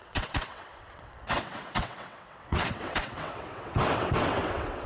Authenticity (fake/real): fake